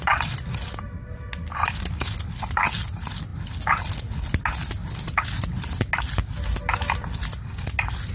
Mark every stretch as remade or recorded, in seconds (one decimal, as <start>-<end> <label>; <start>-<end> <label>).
0.0-8.1 recorded